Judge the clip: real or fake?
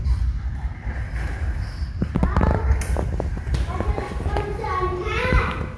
real